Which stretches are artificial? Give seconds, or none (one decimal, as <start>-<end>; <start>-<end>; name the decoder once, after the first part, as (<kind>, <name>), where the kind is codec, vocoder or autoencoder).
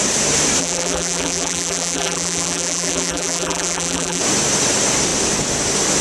0.6-4.2 (vocoder, BigVGAN v2)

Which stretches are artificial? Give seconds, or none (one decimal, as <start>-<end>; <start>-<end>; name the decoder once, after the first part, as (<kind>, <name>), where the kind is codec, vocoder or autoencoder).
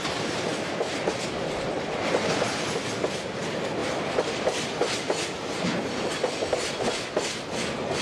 none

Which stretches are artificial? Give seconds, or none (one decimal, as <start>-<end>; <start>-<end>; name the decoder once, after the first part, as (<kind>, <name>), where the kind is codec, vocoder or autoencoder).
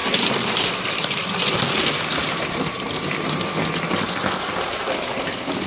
0.0-3.4 (vocoder, BigVGAN v2)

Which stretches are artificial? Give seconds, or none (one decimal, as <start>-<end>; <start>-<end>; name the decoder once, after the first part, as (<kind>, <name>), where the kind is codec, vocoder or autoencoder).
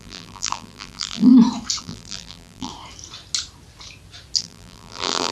0.0-1.3 (vocoder, BigVGAN v2); 1.8-2.7; 4.4-5.3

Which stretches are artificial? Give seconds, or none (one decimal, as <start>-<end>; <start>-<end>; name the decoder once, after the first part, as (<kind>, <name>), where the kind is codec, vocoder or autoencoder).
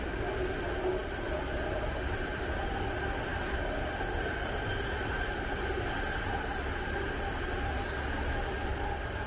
none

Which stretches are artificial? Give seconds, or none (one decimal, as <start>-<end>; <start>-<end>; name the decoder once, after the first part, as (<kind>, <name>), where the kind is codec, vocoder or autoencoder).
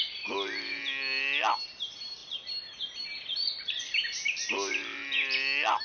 2.2-4.5 (vocoder, BigVGAN v2)